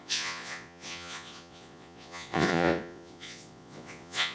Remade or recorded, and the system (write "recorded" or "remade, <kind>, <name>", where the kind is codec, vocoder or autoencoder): remade, vocoder, Vocos